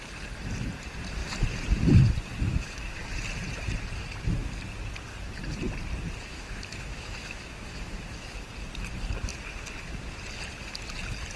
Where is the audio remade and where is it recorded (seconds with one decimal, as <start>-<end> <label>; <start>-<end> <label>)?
0.0-2.5 recorded; 2.5-3.1 remade; 3.1-6.3 recorded; 6.3-8.5 remade; 8.5-11.4 recorded